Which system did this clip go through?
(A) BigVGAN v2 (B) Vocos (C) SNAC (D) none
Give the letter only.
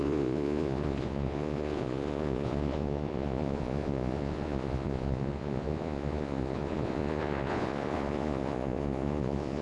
B